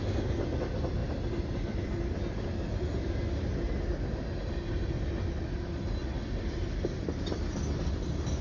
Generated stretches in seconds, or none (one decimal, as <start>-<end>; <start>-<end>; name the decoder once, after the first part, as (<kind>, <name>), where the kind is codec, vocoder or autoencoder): none